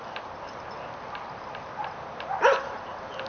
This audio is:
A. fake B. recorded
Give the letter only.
B